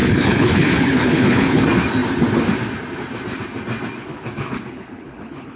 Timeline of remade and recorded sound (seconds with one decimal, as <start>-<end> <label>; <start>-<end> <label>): 0.0-1.6 remade; 1.6-4.0 recorded; 4.0-5.6 remade